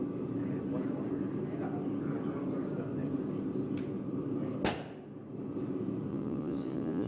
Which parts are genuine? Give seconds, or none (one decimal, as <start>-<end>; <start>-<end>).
0.0-6.1